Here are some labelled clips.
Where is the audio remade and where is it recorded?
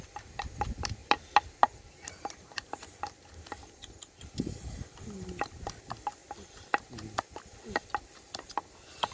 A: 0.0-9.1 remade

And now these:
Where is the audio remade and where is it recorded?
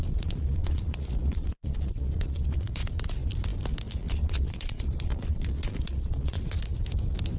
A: 0.0-2.9 remade; 2.9-4.0 recorded; 4.0-6.5 remade; 6.5-7.4 recorded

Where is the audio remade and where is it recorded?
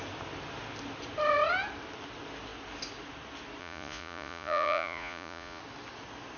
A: 0.0-3.6 recorded; 3.6-5.6 remade; 5.6-6.4 recorded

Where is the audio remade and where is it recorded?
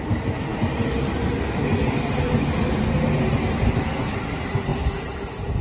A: 0.0-5.6 recorded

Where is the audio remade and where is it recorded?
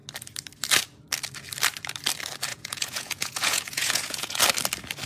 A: 0.0-2.5 recorded; 2.5-4.4 remade; 4.4-5.1 recorded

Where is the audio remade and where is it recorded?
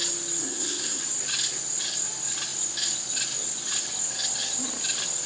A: 0.0-0.4 recorded; 0.4-1.0 remade; 1.0-5.3 recorded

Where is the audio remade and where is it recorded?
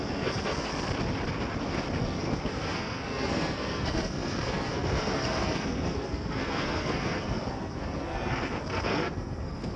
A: 0.0-0.7 remade; 0.7-2.0 recorded; 2.0-9.8 remade